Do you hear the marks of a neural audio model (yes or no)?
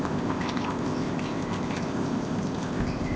yes